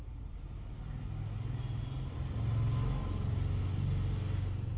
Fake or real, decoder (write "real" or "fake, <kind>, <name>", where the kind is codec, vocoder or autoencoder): real